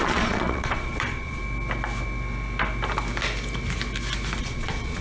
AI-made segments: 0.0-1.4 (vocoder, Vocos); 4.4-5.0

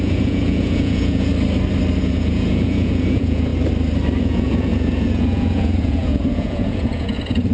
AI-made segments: 0.0-1.3 (vocoder, Vocos); 2.0-3.5; 4.2-7.5

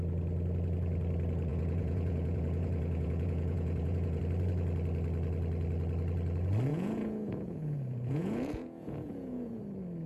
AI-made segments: 1.5-4.2 (vocoder, Vocos); 6.7-9.6

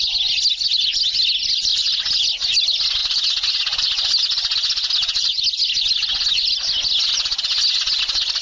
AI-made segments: none

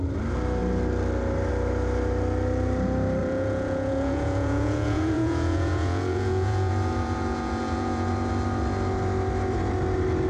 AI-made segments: 3.2-8.1 (vocoder, Vocos)

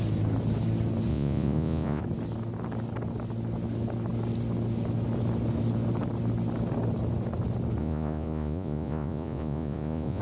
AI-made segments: 1.1-2.0 (vocoder, Vocos); 7.8-10.2